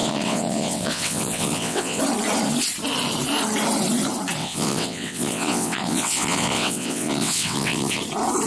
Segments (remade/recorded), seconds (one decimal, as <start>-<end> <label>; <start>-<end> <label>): 0.0-2.0 remade; 2.0-4.4 recorded; 4.4-8.0 remade; 8.0-8.5 recorded